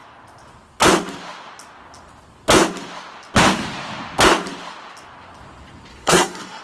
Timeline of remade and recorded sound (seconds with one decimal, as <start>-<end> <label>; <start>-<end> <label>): 0.0-5.9 recorded; 5.9-6.6 remade